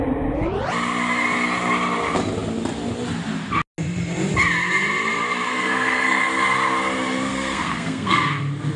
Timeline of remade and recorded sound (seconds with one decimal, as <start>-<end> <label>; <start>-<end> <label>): 0.0-5.5 recorded; 5.5-6.2 remade; 6.2-7.3 recorded; 7.3-8.4 remade; 8.4-8.8 recorded